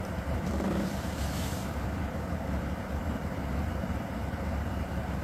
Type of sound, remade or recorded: remade